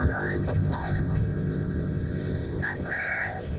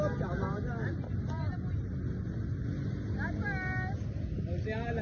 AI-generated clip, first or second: first